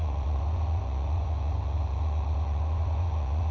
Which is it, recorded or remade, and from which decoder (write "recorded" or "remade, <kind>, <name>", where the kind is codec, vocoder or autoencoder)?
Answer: remade, vocoder, Vocos